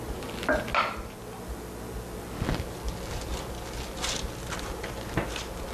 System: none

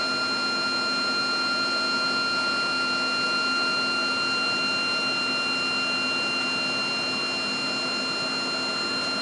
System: none